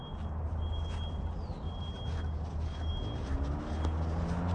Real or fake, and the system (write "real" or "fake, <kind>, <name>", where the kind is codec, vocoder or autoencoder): real